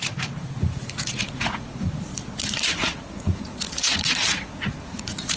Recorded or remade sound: remade